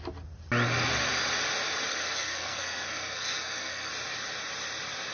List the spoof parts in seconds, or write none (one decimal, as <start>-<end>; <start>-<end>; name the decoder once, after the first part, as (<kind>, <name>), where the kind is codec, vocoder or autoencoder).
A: 1.9-3.9 (codec, SNAC)

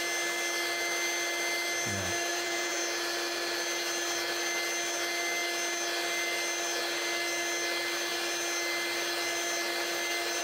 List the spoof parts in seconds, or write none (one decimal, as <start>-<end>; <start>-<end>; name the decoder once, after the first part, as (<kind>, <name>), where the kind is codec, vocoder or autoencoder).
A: 2.3-2.8 (vocoder, Vocos)

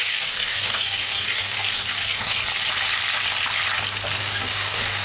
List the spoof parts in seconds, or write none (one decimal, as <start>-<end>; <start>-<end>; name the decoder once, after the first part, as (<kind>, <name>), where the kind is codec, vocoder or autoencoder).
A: 0.0-2.4 (codec, DAC); 4.2-5.0

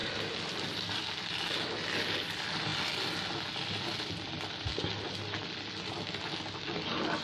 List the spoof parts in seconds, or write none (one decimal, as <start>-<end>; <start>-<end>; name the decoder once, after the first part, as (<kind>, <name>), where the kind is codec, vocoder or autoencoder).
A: none

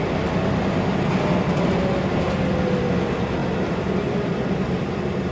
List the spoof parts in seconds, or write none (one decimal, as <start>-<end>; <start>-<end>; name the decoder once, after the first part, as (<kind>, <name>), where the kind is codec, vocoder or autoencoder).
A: none

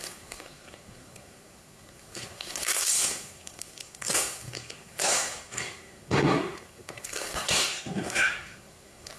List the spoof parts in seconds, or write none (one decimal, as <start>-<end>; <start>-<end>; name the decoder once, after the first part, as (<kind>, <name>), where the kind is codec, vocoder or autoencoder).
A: 0.0-9.2 (codec, SNAC)

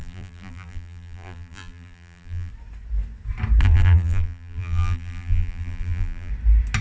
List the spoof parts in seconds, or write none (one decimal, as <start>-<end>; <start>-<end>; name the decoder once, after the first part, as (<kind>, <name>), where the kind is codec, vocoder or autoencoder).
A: 0.0-2.5 (vocoder, BigVGAN v2); 3.6-6.3

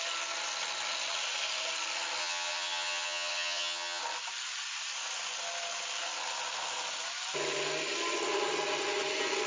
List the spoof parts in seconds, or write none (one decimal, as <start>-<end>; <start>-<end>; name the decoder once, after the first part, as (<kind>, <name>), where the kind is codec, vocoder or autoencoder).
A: 2.2-4.0 (vocoder, HiFi-GAN)